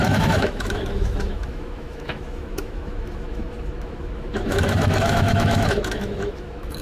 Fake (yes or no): yes